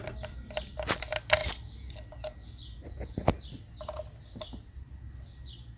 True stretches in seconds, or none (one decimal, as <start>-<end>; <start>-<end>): 0.0-5.8